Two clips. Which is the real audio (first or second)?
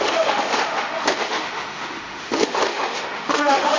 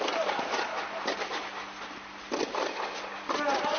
second